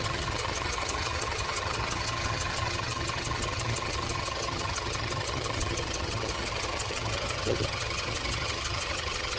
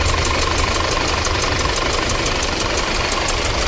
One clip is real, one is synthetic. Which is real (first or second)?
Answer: second